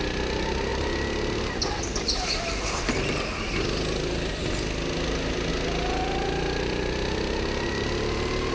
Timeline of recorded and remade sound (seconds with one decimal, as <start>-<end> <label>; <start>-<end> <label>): 0.0-8.5 recorded